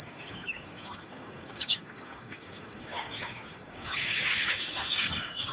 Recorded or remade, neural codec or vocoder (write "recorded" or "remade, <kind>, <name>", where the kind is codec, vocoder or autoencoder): remade, codec, DAC